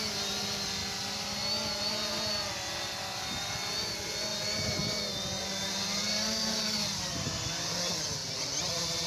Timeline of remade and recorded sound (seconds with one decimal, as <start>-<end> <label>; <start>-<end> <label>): 0.0-9.1 recorded